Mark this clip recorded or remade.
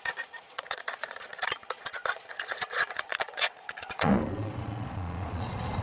remade